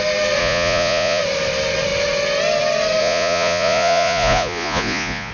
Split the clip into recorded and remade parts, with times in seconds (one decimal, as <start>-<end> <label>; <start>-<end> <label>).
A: 0.0-0.4 recorded; 0.4-1.2 remade; 1.2-3.0 recorded; 3.0-5.3 remade